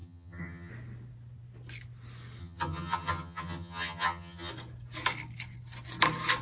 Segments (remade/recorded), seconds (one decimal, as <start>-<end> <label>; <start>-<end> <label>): 0.0-0.7 remade; 0.7-2.4 recorded; 2.4-4.5 remade; 4.5-6.4 recorded

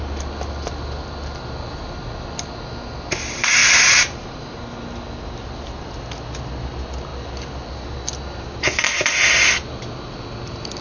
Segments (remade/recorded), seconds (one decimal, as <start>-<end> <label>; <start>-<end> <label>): 0.0-3.6 recorded; 3.6-4.6 remade; 4.6-10.8 recorded

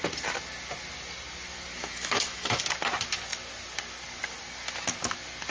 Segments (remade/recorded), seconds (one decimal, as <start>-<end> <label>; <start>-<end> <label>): 0.0-1.8 recorded; 1.8-2.6 remade; 2.6-5.5 recorded

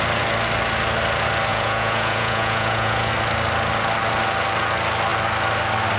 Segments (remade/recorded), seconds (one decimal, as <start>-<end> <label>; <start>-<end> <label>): 0.0-1.5 recorded; 1.5-3.1 remade; 3.1-6.0 recorded

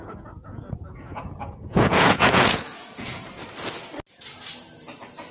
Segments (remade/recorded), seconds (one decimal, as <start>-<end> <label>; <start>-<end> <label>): 0.0-3.2 remade; 3.2-5.3 recorded